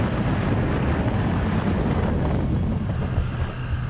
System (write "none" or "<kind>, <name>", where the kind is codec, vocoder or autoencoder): none